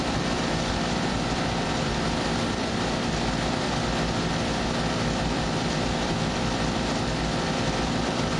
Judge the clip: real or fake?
fake